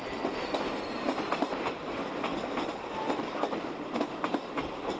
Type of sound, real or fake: real